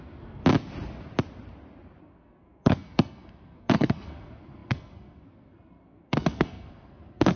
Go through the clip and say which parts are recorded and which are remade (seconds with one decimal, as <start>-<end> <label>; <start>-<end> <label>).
0.0-0.4 remade; 0.4-2.0 recorded; 2.0-7.4 remade